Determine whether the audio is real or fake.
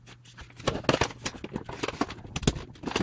real